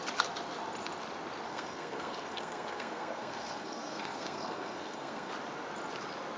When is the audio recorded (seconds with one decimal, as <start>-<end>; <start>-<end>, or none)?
0.0-1.5; 5.3-6.4